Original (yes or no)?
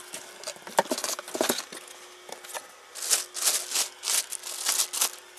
yes